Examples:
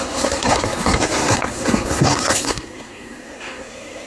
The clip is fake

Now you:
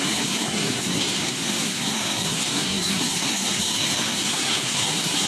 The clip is fake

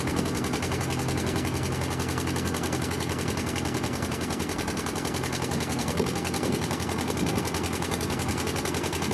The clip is fake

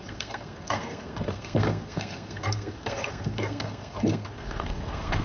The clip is fake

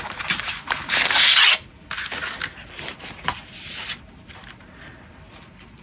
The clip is real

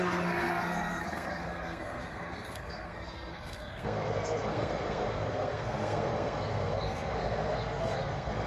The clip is fake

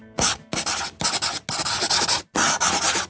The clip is real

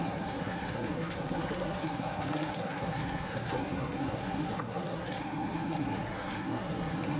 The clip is fake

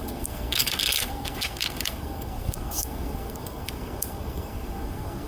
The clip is fake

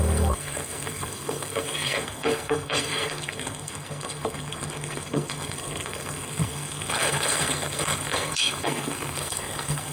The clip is fake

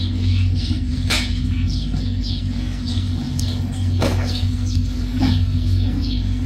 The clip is fake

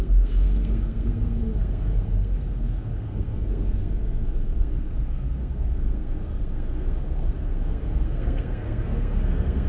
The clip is fake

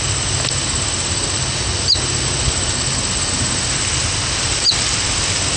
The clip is real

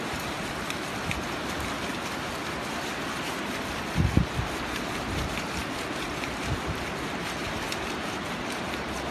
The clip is real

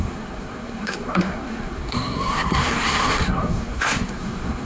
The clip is fake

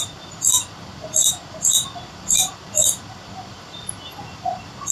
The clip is real